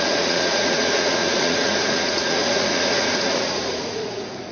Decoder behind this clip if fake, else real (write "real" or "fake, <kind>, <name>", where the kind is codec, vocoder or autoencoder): fake, vocoder, Vocos